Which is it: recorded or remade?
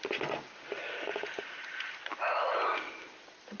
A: recorded